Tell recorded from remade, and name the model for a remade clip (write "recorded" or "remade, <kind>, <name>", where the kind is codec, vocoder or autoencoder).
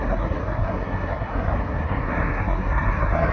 remade, codec, SNAC